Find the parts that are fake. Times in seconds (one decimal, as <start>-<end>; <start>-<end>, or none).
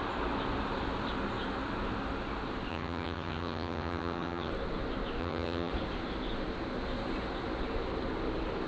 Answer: 2.7-4.5; 5.2-5.7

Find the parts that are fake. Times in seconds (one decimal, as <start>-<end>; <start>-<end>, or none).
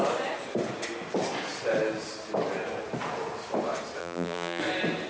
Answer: 4.0-4.6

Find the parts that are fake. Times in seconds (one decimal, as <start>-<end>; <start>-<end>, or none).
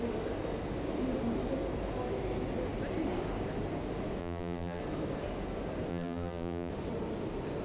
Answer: 4.2-4.8; 5.9-6.7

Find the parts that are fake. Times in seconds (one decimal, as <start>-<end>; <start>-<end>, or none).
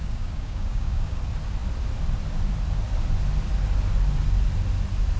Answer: 0.0-1.2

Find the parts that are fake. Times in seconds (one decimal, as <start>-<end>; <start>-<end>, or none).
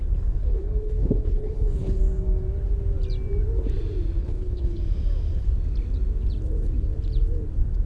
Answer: 0.4-2.0; 4.2-4.8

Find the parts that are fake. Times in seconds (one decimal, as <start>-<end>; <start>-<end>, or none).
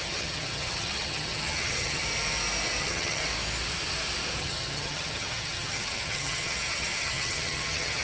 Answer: 0.0-2.0; 2.8-3.2; 4.4-8.0